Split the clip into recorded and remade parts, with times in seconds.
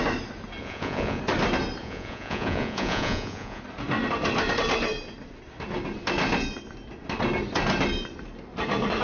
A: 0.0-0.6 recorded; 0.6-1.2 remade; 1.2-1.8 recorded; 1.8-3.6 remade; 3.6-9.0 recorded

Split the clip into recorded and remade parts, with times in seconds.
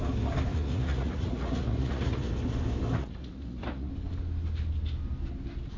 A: 0.0-0.5 recorded; 0.5-2.3 remade; 2.3-3.0 recorded; 3.0-3.9 remade; 3.9-5.8 recorded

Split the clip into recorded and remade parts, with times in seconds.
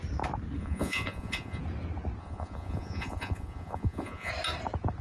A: 0.0-0.6 recorded; 0.6-1.6 remade; 1.6-2.2 recorded; 2.2-4.3 remade; 4.3-5.0 recorded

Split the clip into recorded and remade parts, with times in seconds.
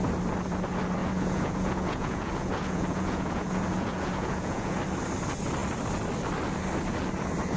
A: 0.0-1.0 recorded; 1.0-4.8 remade; 4.8-7.6 recorded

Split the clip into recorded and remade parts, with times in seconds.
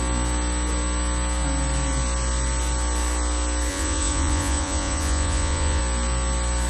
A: 0.0-3.7 recorded; 3.7-5.8 remade; 5.8-6.7 recorded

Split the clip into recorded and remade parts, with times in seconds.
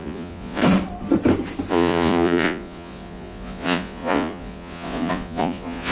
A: 0.0-0.6 remade; 0.6-1.7 recorded; 1.7-5.9 remade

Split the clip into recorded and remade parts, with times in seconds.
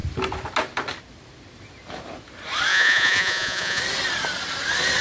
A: 0.0-2.7 recorded; 2.7-3.8 remade; 3.8-5.0 recorded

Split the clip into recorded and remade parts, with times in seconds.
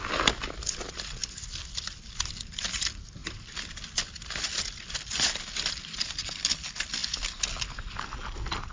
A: 0.0-8.7 recorded